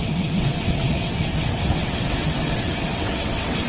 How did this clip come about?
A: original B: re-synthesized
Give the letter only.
B